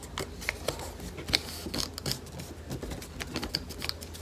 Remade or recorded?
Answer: recorded